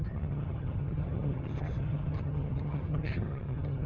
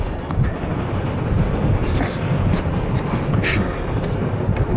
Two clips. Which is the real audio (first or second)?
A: second